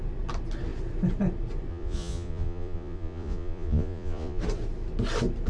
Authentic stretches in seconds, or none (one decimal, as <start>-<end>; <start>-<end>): 0.0-1.7; 4.4-5.5